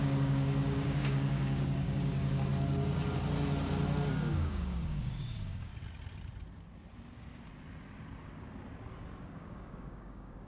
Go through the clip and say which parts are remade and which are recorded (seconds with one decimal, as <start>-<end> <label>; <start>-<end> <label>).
0.0-2.5 remade; 2.5-4.1 recorded; 4.1-5.7 remade; 5.7-9.2 recorded; 9.2-10.5 remade